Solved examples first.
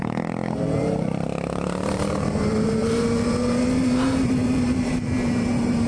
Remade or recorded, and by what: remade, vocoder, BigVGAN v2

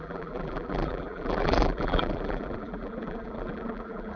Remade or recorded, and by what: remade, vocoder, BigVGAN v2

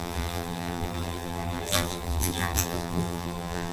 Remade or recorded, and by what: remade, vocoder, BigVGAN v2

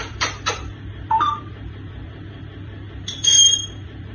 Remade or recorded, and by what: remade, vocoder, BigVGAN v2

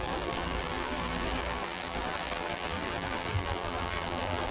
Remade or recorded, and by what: remade, vocoder, BigVGAN v2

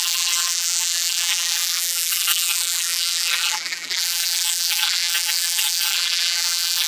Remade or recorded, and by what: remade, vocoder, BigVGAN v2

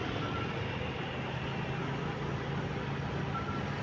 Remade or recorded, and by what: recorded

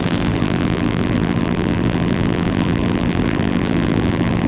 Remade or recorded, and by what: remade, vocoder, BigVGAN v2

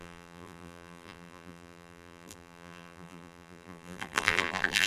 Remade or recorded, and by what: remade, vocoder, BigVGAN v2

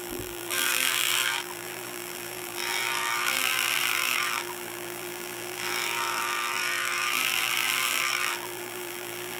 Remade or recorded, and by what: remade, vocoder, BigVGAN v2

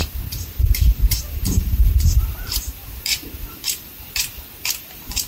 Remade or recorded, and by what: remade, vocoder, BigVGAN v2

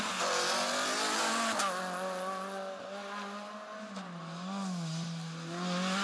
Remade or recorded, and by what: recorded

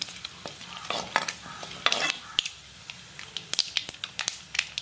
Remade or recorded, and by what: recorded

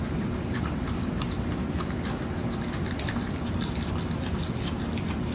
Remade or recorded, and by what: remade, vocoder, BigVGAN v2